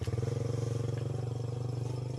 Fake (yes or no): no